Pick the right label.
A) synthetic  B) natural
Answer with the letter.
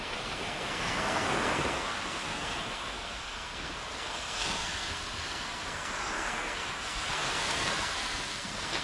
A